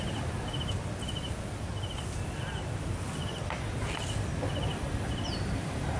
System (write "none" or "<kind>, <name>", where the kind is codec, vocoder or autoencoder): none